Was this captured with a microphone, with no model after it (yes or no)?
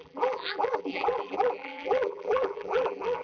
no